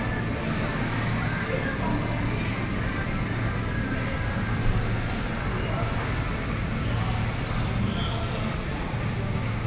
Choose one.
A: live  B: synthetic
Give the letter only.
A